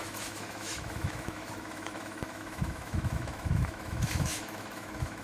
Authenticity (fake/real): fake